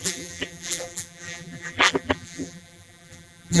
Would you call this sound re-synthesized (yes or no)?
yes